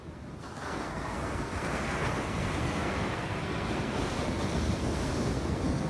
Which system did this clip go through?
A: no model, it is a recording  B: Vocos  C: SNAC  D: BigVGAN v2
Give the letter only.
C